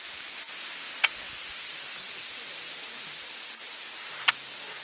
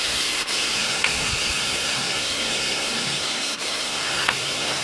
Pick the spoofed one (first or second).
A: second